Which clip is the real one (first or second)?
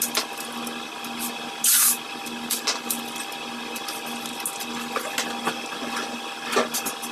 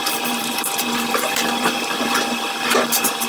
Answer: first